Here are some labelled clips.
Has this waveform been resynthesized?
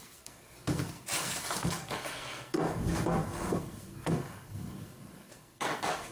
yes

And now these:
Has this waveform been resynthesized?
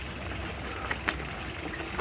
no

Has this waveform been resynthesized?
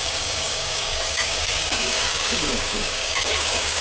yes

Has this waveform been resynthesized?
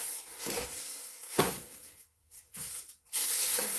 yes